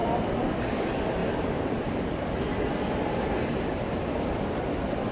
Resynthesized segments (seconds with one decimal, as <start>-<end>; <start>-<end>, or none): none